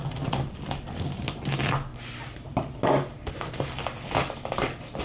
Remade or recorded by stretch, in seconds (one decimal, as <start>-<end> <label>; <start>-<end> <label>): 0.0-5.0 recorded